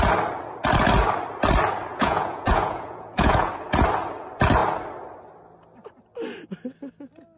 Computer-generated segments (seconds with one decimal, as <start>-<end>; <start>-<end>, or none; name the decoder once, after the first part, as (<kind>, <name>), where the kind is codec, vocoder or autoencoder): 1.9-3.5 (vocoder, Vocos)